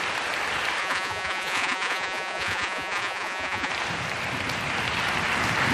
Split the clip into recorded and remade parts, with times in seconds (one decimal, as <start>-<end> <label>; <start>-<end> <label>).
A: 0.0-0.8 recorded; 0.8-3.7 remade; 3.7-5.7 recorded